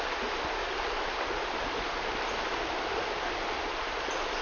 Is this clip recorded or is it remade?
recorded